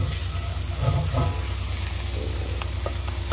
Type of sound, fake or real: real